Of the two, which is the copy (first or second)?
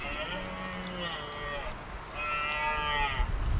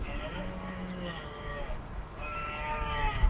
second